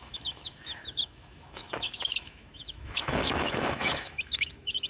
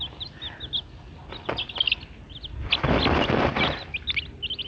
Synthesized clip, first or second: first